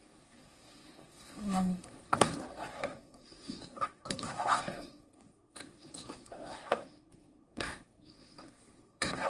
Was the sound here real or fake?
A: fake